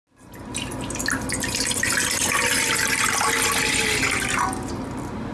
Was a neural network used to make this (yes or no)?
no